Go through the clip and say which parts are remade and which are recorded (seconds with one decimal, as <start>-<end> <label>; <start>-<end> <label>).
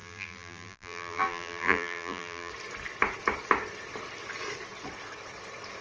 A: 0.0-2.5 remade; 2.5-5.8 recorded